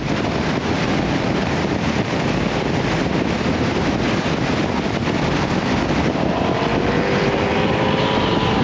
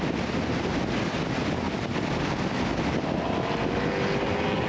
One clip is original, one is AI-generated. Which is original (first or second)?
second